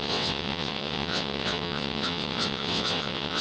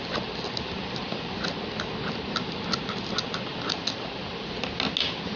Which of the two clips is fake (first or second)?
first